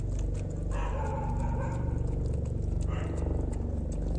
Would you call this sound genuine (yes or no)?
yes